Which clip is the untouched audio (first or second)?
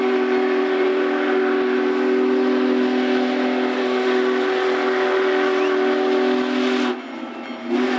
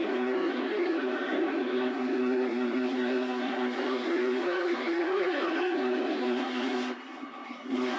first